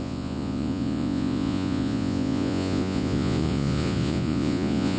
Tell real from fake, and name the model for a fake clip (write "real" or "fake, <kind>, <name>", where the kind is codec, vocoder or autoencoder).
fake, vocoder, Vocos